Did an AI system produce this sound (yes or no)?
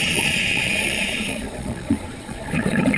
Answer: yes